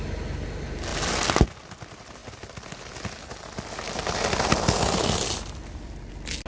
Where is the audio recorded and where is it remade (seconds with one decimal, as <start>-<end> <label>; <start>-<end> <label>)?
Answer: 0.0-6.5 recorded